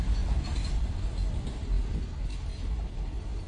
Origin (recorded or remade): recorded